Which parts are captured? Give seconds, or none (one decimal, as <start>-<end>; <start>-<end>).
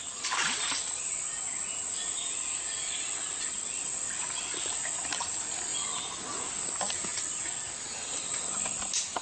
0.0-9.2